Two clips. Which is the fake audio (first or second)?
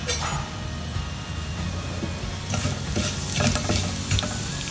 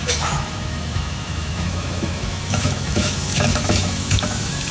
second